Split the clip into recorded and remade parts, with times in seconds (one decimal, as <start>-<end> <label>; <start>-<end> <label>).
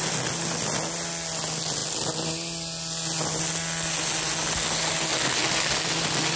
0.0-6.4 recorded